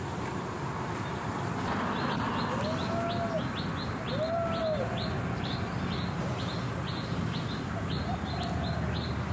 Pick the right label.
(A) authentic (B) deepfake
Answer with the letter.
A